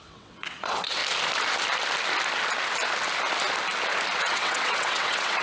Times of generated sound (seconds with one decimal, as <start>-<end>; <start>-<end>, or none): 0.0-1.0; 4.2-5.4